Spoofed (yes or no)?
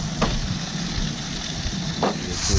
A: no